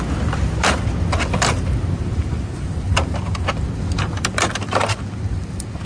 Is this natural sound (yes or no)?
yes